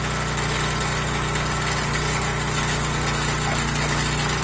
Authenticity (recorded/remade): recorded